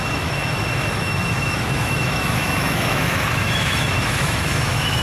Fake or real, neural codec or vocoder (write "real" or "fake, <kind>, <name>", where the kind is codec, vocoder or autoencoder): fake, autoencoder, DAC-VAE